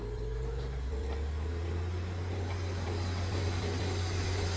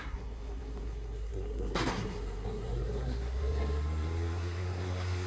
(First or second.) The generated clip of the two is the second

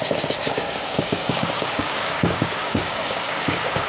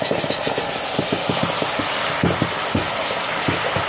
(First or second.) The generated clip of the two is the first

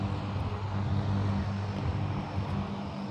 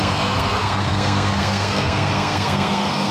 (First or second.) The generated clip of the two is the second